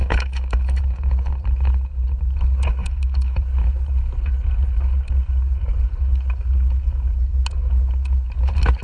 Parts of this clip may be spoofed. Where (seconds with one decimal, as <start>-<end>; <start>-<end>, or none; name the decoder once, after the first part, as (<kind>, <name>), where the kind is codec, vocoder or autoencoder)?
0.0-0.8 (autoencoder, DAC-VAE); 2.8-3.4